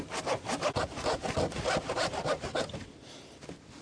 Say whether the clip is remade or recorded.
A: recorded